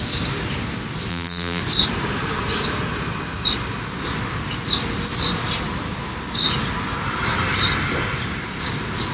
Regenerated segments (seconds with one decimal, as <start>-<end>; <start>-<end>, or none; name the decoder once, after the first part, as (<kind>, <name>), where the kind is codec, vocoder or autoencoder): 1.1-1.6 (vocoder, BigVGAN v2)